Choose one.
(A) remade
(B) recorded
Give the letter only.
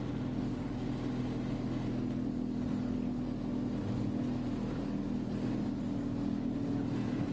B